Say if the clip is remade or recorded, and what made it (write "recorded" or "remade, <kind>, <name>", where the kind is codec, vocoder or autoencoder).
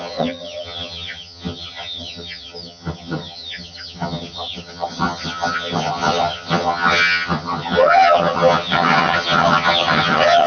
remade, vocoder, HiFi-GAN